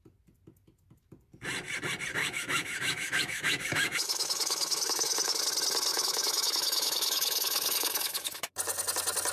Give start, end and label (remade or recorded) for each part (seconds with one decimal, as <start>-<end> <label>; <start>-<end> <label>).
0.0-2.2 recorded; 2.2-5.4 remade; 5.4-5.9 recorded; 5.9-8.5 remade; 8.5-9.3 recorded